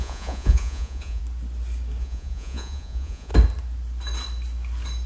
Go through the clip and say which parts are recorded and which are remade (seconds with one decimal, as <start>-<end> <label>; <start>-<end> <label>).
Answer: 0.0-1.2 remade; 1.2-2.0 recorded; 2.0-3.3 remade; 3.3-5.1 recorded